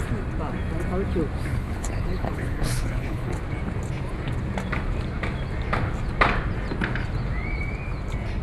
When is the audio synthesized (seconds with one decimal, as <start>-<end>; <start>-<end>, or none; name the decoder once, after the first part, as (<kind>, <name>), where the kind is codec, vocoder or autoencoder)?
1.5-3.4 (codec, HILCodec)